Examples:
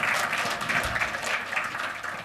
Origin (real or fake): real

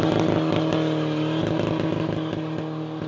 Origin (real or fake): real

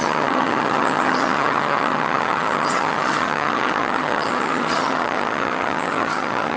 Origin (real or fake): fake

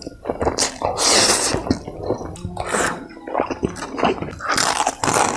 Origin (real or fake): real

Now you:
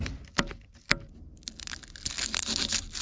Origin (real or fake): real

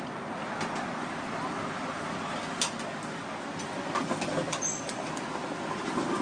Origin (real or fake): real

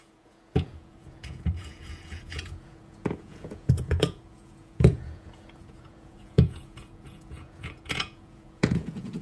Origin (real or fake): fake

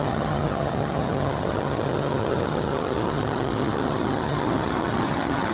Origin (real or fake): fake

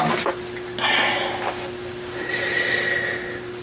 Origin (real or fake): real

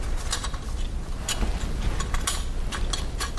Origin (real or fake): real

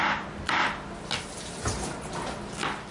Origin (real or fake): real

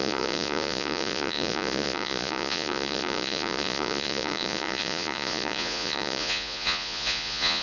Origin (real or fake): fake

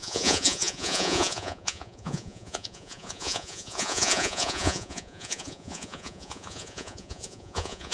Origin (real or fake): fake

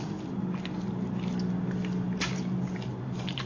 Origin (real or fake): real